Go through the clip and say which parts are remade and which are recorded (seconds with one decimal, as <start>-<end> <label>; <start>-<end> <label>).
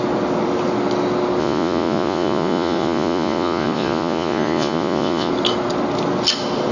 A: 0.0-1.4 recorded; 1.4-5.3 remade; 5.3-6.7 recorded